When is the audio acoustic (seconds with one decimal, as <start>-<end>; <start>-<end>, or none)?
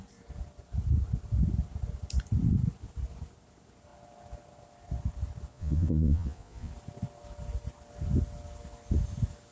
0.0-5.5; 6.7-9.5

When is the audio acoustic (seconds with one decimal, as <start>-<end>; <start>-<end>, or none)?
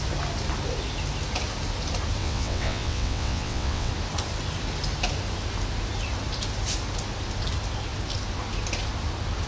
0.0-2.2; 3.9-9.5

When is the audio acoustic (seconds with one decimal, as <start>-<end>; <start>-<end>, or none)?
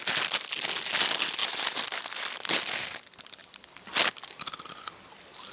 0.0-1.4; 2.0-3.4; 5.1-5.5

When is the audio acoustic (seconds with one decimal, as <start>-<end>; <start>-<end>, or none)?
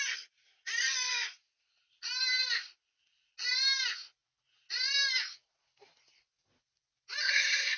0.0-7.2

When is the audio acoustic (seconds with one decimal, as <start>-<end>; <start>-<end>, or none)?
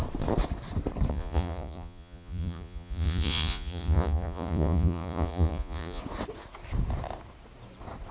0.0-1.1; 6.0-8.1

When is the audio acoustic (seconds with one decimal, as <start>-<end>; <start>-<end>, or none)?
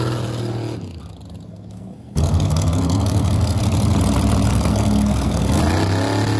0.0-1.5; 3.6-4.5; 5.6-6.4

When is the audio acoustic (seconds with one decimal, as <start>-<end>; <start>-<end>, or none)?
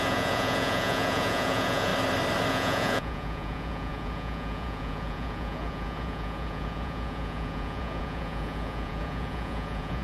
1.9-2.5